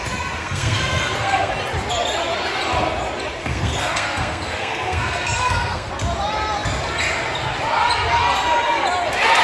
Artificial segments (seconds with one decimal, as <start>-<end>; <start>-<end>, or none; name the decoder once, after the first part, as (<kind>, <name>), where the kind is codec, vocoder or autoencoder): 0.4-1.5 (codec, SNAC); 3.4-5.9